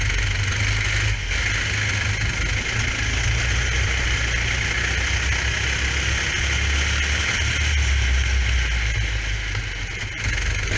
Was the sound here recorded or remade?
recorded